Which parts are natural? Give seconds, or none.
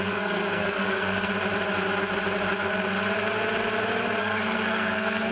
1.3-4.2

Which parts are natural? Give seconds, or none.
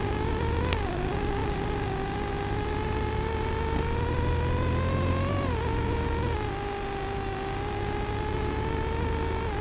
0.0-9.6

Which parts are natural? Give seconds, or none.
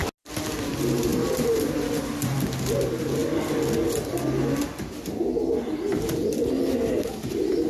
0.0-7.7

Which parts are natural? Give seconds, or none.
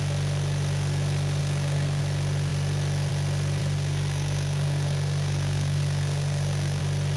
0.0-1.4; 2.0-3.6; 6.8-7.2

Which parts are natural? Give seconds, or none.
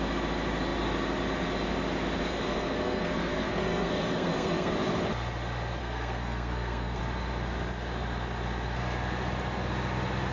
0.0-2.3; 4.7-5.8; 7.0-10.3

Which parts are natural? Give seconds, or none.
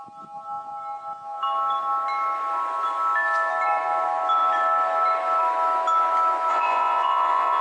0.0-6.5